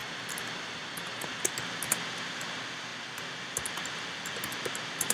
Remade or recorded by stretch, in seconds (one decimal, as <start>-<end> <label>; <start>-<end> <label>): 0.0-5.1 recorded